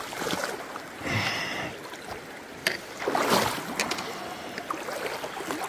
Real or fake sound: real